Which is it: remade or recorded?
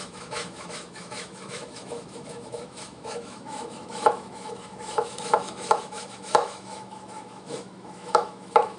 remade